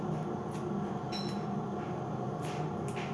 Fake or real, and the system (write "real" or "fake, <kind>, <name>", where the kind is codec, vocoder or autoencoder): real